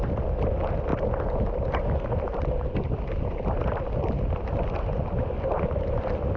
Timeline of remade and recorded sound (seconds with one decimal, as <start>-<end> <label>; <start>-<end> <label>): 0.0-6.4 recorded